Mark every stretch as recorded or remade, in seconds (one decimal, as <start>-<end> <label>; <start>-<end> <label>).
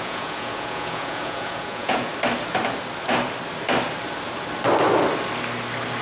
0.0-2.1 remade; 2.1-6.0 recorded